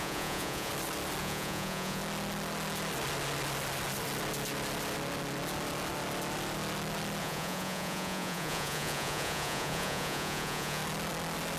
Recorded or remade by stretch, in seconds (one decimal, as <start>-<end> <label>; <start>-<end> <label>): 0.0-0.7 remade; 0.7-1.2 recorded; 1.2-2.0 remade; 2.0-7.2 recorded; 7.2-10.8 remade; 10.8-11.6 recorded